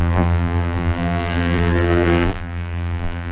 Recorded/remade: remade